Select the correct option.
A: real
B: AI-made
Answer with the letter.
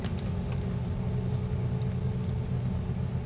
A